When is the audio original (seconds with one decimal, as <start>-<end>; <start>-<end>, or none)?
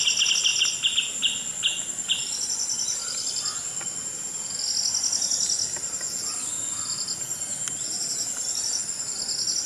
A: 0.0-9.7